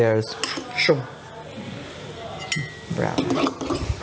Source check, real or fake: real